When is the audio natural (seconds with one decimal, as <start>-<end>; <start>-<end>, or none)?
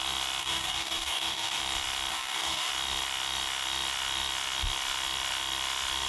0.0-0.4; 1.6-2.1; 2.7-6.1